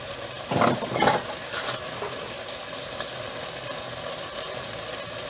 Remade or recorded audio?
recorded